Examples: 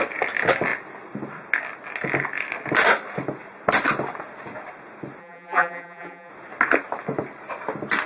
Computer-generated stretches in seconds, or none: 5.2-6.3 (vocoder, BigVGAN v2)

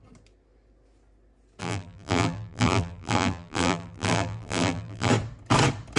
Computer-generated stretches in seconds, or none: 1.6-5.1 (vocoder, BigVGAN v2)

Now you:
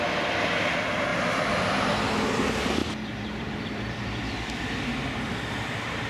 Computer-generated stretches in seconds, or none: 1.1-1.9 (vocoder, BigVGAN v2); 2.8-6.1

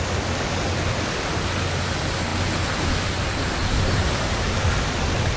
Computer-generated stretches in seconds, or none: 3.6-4.7 (vocoder, BigVGAN v2)

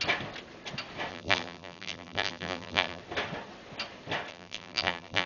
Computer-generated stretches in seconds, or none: 1.1-3.0 (vocoder, BigVGAN v2); 4.3-5.3

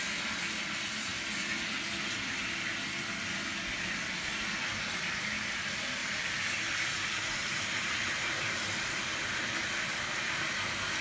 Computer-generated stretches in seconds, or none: 6.0-8.8 (vocoder, BigVGAN v2)

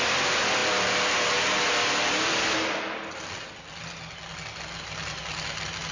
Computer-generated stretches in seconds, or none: none

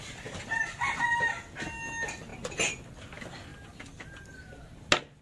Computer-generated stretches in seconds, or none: 0.6-1.2 (vocoder, BigVGAN v2); 3.5-4.8